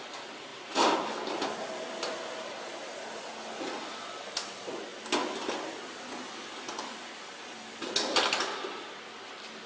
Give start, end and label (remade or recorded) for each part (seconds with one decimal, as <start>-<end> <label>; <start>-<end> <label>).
0.0-9.7 recorded